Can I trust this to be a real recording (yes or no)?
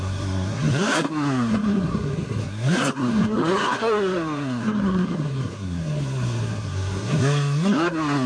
no